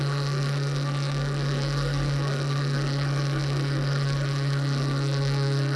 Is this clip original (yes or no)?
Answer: no